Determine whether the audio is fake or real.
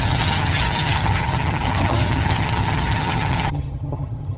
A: fake